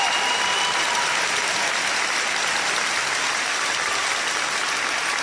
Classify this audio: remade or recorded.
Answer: recorded